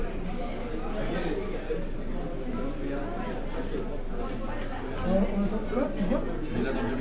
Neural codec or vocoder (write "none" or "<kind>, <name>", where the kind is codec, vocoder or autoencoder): none